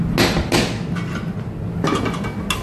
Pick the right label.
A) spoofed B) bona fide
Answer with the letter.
B